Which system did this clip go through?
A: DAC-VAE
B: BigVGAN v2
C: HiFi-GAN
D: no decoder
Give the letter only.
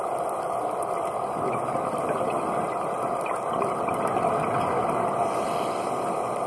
D